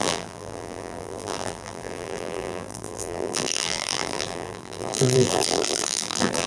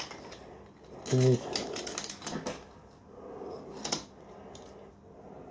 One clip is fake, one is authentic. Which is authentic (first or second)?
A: second